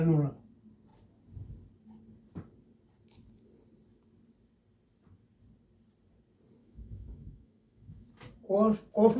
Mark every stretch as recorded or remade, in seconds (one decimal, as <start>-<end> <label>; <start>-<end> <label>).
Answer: 0.0-6.6 recorded; 6.6-8.1 remade; 8.1-9.2 recorded